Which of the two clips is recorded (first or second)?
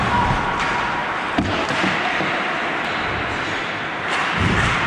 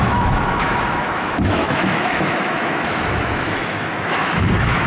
first